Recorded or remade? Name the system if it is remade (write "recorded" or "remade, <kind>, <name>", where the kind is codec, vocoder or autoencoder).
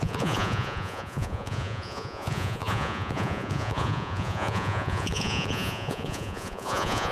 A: remade, vocoder, Vocos